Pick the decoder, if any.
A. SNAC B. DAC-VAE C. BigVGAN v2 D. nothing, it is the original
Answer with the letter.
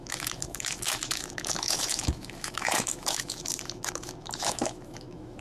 B